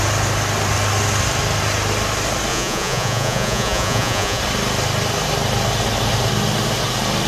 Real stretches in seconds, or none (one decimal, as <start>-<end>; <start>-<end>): 0.0-2.5; 4.4-7.3